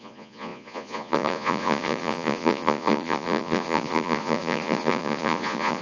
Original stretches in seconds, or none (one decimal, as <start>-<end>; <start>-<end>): none